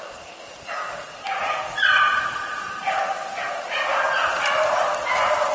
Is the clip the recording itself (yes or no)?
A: yes